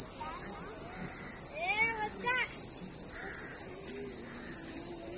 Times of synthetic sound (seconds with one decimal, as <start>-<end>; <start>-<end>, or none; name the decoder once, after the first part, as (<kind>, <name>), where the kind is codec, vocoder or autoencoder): none